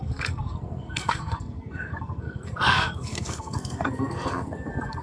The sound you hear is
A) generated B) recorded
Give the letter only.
A